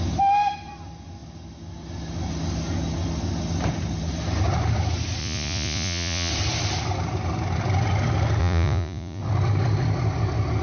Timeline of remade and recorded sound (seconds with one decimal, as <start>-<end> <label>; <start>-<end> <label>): 0.0-5.2 recorded; 5.2-6.3 remade; 6.3-8.4 recorded; 8.4-9.2 remade; 9.2-10.6 recorded